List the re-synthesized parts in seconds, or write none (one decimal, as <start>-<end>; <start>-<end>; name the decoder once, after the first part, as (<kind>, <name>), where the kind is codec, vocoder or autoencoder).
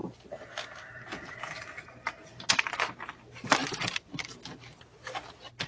none